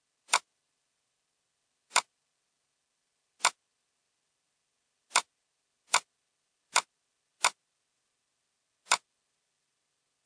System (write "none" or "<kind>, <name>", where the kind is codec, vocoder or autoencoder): none